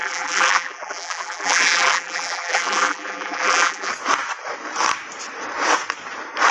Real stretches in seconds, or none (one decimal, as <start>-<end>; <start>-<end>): 3.9-6.5